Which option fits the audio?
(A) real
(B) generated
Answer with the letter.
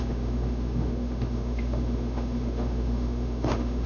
B